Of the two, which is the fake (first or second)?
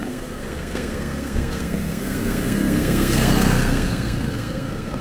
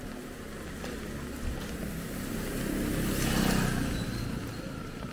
first